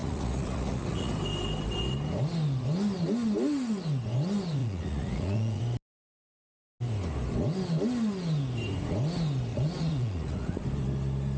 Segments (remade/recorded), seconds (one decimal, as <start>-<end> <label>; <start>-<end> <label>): 0.0-1.1 remade; 1.1-4.6 recorded; 4.6-5.6 remade; 5.6-9.5 recorded; 9.5-10.6 remade; 10.6-11.4 recorded